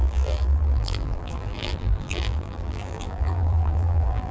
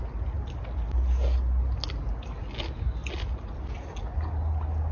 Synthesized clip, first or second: first